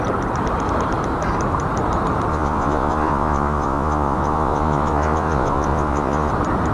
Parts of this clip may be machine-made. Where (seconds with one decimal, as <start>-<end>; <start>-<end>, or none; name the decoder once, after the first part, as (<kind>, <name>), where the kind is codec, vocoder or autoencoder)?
2.3-6.3 (vocoder, Vocos)